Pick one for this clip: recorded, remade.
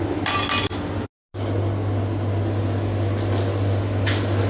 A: recorded